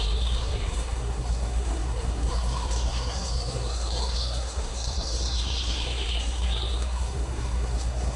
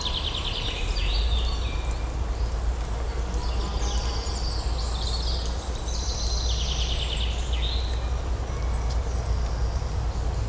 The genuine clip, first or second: second